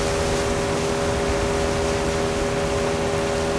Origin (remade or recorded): recorded